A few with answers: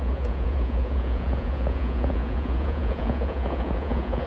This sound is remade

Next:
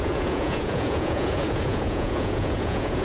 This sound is remade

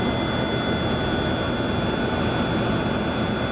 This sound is recorded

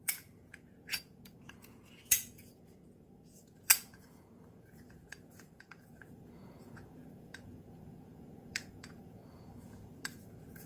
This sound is remade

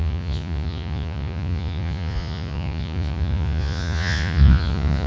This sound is remade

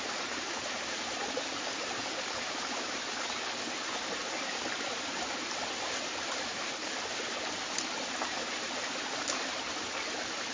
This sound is recorded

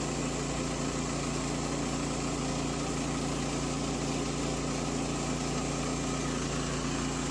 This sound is recorded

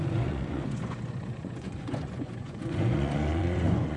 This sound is remade